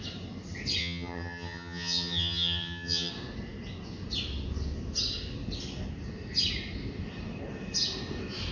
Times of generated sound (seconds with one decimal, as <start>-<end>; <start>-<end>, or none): 0.8-3.1